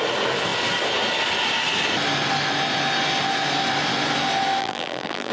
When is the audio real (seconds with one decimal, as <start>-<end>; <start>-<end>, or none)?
0.0-4.6

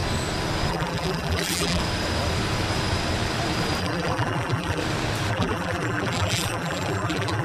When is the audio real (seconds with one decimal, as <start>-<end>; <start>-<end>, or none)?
0.0-0.7; 1.8-3.8; 4.8-5.3

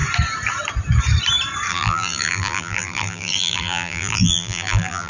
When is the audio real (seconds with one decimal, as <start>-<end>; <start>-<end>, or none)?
0.0-1.7